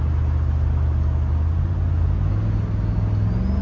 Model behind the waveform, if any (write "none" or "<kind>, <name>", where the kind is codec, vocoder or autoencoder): none